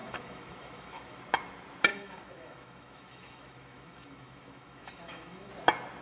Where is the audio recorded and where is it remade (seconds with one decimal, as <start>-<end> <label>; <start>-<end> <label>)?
0.0-1.2 remade; 1.2-1.9 recorded; 1.9-5.5 remade; 5.5-6.0 recorded